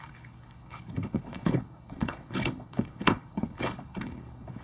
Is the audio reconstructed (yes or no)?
yes